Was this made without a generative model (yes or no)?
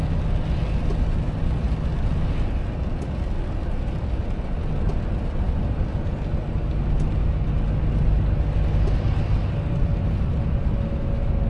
yes